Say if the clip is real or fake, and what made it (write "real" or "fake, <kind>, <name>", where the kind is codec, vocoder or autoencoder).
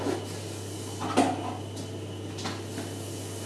real